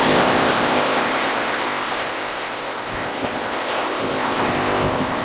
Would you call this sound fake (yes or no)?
yes